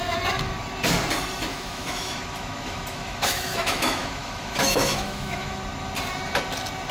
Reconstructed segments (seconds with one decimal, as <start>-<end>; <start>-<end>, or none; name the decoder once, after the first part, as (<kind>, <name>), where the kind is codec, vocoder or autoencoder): 1.5-5.6 (autoencoder, DAC-VAE)